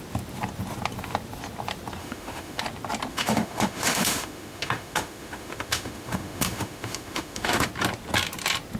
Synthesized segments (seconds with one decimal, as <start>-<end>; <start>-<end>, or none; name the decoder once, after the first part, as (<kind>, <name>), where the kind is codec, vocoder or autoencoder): 2.0-2.6 (autoencoder, DAC-VAE); 3.1-7.7